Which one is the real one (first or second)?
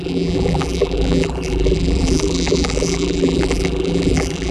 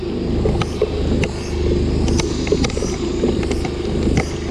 second